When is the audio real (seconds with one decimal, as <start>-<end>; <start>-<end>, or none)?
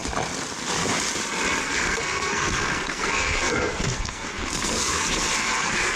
0.0-1.6